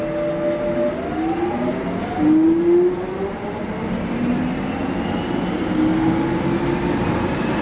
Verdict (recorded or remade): recorded